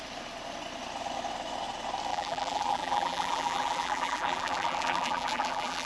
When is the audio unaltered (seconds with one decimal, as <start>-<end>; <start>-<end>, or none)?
0.0-2.1